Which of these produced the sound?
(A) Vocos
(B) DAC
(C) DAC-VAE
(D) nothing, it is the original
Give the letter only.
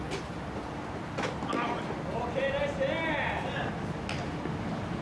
D